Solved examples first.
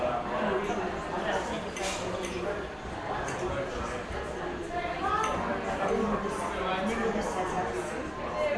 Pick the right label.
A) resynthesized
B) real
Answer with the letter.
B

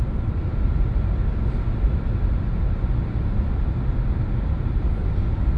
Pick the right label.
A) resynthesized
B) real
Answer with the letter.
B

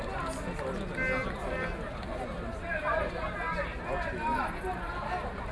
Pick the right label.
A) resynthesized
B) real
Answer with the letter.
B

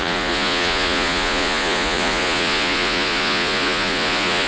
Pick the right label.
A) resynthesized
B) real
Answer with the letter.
A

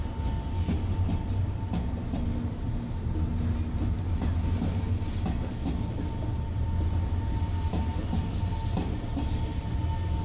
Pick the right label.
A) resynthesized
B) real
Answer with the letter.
B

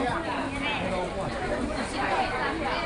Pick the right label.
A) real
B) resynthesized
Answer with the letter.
A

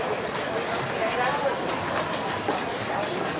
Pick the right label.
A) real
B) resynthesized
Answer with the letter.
A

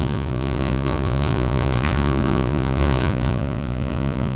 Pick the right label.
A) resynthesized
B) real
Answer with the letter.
A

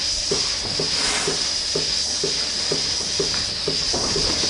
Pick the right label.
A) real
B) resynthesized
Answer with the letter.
A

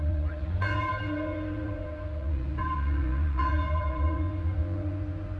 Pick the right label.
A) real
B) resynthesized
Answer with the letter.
B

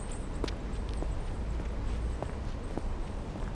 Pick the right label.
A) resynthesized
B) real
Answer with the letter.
B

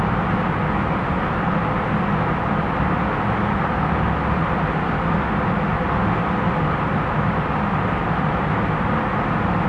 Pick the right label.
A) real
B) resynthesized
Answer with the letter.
A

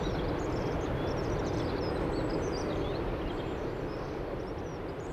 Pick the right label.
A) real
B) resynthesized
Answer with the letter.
A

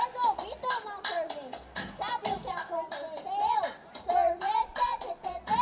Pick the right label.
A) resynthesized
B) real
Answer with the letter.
B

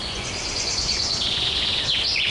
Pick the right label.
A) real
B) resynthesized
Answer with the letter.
B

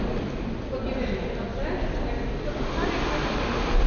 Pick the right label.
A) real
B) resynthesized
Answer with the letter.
A